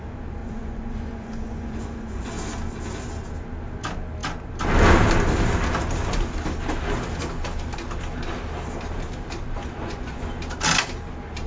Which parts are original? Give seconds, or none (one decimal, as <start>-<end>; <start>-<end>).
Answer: 0.0-0.4; 2.3-9.6; 10.3-11.5